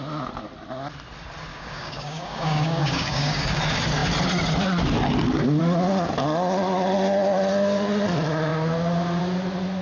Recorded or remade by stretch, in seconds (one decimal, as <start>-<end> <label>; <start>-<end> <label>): 0.0-1.5 recorded; 1.5-3.6 remade; 3.6-9.8 recorded